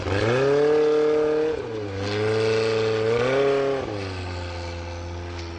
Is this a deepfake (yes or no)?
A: no